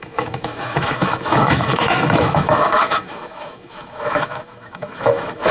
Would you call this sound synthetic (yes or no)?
yes